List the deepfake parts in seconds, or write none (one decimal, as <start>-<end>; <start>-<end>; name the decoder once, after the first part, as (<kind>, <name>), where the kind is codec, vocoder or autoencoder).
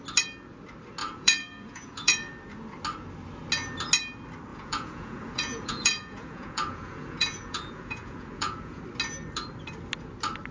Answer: 1.0-2.3 (vocoder, Vocos); 4.5-8.8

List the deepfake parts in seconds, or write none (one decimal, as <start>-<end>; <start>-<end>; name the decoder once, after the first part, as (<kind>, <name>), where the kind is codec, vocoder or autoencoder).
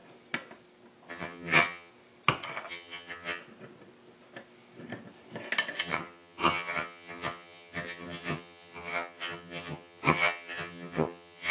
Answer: 1.1-1.9 (vocoder, HiFi-GAN); 2.7-3.4; 5.8-11.5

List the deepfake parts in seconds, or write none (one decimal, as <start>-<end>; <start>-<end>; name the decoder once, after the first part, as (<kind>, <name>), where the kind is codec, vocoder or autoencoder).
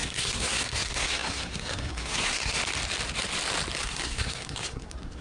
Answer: 0.0-2.6 (codec, SNAC); 3.8-5.2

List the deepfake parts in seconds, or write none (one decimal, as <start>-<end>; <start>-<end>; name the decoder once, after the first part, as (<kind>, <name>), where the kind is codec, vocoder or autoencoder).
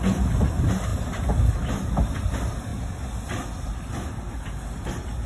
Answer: none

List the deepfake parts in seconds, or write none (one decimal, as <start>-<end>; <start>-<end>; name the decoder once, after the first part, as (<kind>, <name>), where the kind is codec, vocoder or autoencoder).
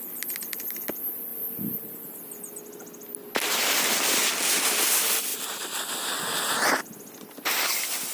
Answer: none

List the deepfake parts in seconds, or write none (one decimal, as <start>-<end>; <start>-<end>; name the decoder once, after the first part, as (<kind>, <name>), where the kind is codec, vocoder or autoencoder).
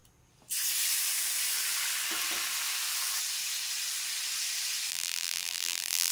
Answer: 4.9-6.1 (vocoder, BigVGAN v2)